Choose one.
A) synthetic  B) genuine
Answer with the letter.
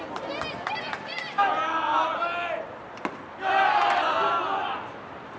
B